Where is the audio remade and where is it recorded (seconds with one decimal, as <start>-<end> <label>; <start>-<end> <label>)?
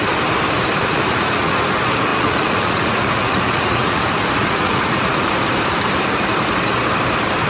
0.0-0.8 recorded; 0.8-1.5 remade; 1.5-2.1 recorded; 2.1-4.0 remade; 4.0-4.4 recorded; 4.4-5.3 remade; 5.3-7.5 recorded